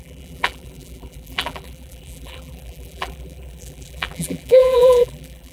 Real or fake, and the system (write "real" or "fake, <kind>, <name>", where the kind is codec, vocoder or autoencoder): fake, vocoder, BigVGAN v2